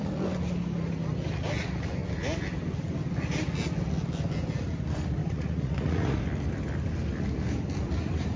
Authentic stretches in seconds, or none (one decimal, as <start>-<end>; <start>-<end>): 0.0-5.2; 6.2-8.4